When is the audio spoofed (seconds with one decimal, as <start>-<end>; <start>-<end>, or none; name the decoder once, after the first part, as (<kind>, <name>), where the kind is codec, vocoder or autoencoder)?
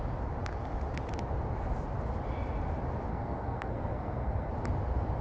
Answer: 3.1-4.5 (codec, SNAC)